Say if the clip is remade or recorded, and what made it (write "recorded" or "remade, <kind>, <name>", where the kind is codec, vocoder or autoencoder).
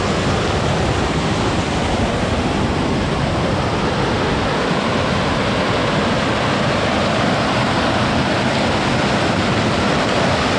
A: recorded